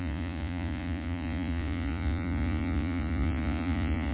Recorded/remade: remade